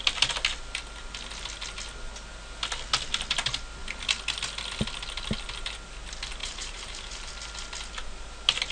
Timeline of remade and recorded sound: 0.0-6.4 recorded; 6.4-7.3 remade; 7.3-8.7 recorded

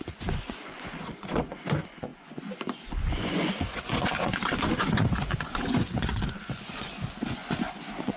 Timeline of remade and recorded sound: 0.0-8.2 remade

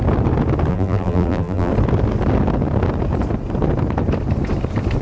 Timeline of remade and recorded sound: 0.0-0.7 recorded; 0.7-1.7 remade; 1.7-5.0 recorded

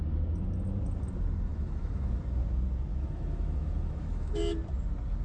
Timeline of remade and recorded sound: 0.0-1.5 recorded; 1.5-2.2 remade; 2.2-2.9 recorded; 2.9-4.4 remade; 4.4-5.2 recorded

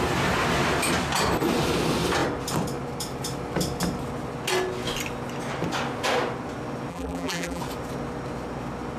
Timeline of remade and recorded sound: 0.0-6.9 recorded; 6.9-7.6 remade; 7.6-9.0 recorded

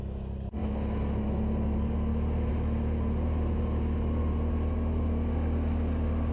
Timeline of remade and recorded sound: 0.0-6.3 recorded

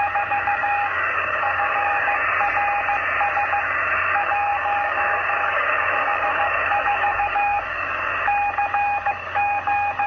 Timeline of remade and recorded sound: 0.0-2.2 remade; 2.2-3.6 recorded; 3.6-8.1 remade; 8.1-9.1 recorded; 9.1-10.1 remade

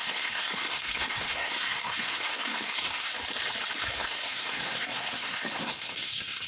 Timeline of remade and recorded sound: 0.0-3.1 remade; 3.1-3.8 recorded; 3.8-6.5 remade